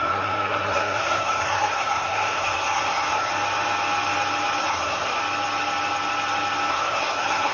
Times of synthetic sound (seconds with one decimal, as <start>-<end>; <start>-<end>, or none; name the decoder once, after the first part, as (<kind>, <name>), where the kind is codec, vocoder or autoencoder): 0.0-3.3 (codec, SNAC); 4.6-5.2; 6.7-7.5

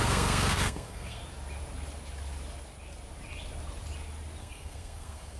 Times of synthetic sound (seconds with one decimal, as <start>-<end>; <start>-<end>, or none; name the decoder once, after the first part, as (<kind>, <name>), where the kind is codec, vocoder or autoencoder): 0.0-1.2 (codec, SNAC); 4.4-5.4

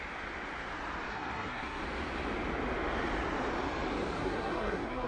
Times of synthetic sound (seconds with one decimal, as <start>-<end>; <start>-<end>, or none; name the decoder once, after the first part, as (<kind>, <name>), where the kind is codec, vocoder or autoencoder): 1.1-1.8 (codec, SNAC); 4.2-5.1

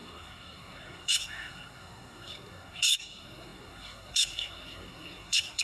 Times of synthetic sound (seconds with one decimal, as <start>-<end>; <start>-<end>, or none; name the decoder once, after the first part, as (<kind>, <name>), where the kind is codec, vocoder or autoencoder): 0.0-5.6 (codec, SNAC)

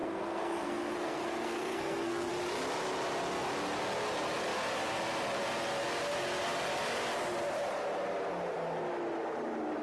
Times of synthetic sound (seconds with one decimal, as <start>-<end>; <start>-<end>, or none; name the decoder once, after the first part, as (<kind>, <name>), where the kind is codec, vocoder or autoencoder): 0.0-2.3 (codec, SNAC)